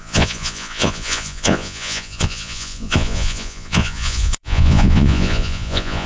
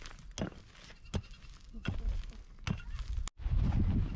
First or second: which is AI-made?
first